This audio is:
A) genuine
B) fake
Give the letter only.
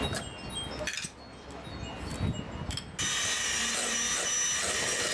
A